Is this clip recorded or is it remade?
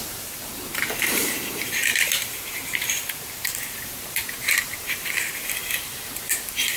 remade